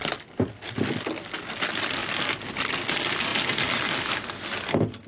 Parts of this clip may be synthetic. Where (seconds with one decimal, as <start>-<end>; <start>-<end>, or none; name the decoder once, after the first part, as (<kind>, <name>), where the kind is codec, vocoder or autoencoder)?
none